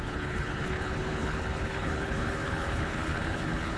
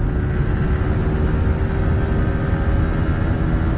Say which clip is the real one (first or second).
second